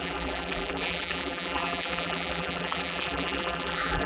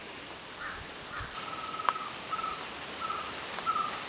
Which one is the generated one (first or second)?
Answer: first